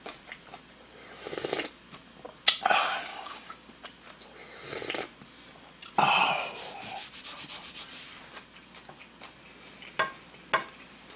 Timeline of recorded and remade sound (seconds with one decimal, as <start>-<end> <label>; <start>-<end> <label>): 0.0-3.1 recorded; 3.1-3.7 remade; 3.7-11.2 recorded